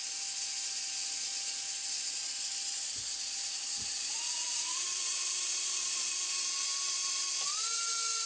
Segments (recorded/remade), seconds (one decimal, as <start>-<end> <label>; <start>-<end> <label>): 0.0-3.4 recorded; 3.4-6.3 remade; 6.3-8.2 recorded